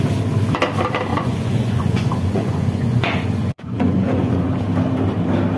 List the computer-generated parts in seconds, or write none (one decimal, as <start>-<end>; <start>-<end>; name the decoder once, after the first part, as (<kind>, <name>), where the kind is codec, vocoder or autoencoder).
1.1-4.5 (vocoder, Vocos)